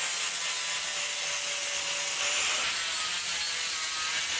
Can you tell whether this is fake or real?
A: real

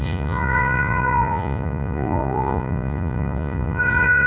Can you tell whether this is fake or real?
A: fake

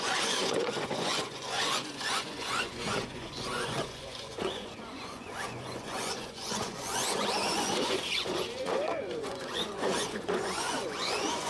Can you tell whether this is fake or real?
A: fake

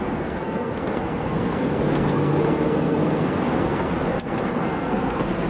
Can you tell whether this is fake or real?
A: fake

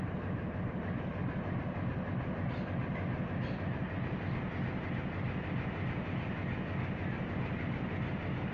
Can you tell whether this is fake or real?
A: real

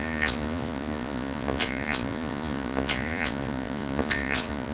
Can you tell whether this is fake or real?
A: fake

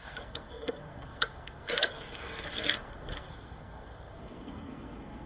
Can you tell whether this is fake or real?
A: fake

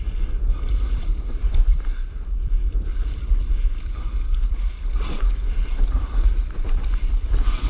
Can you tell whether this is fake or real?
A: fake